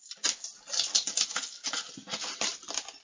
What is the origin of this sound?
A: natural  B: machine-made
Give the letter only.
A